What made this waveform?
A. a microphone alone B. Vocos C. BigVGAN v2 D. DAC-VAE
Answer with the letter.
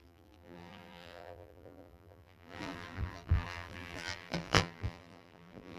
C